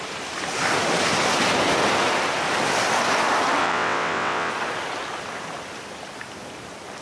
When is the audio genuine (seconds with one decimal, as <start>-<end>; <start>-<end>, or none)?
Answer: 0.0-3.6; 4.5-7.0